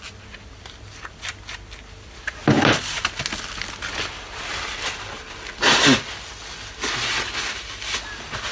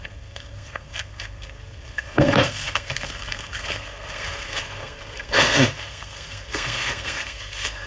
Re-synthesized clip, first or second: second